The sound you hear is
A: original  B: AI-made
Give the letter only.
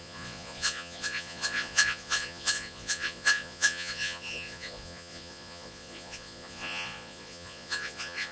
B